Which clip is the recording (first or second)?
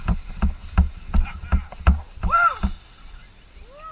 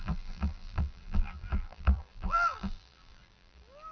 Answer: first